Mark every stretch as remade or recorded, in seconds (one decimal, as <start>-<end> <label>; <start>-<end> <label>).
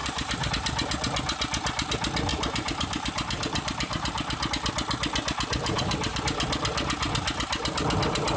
0.0-0.5 remade; 0.5-2.3 recorded; 2.3-4.5 remade; 4.5-5.6 recorded; 5.6-6.2 remade; 6.2-8.4 recorded